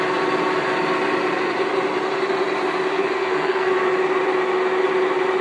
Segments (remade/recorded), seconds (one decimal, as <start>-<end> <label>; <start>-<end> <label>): 0.0-2.9 recorded; 2.9-3.7 remade; 3.7-5.4 recorded